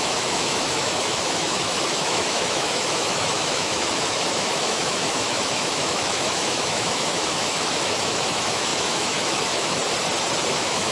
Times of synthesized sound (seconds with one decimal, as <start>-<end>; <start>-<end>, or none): 0.0-9.8; 10.5-10.9